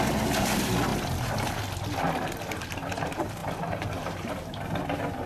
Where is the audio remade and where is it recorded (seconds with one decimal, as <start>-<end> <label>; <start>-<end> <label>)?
0.0-3.4 recorded; 3.4-4.3 remade; 4.3-5.3 recorded